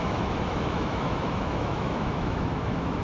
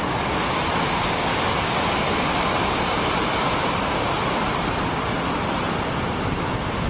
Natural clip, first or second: second